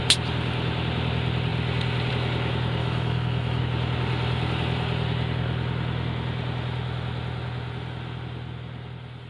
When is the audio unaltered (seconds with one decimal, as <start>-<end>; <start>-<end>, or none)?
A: 0.0-2.8; 3.6-9.3